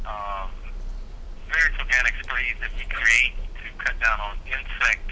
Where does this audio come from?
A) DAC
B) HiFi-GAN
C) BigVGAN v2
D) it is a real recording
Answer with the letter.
D